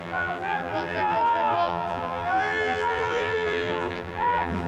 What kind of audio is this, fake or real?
fake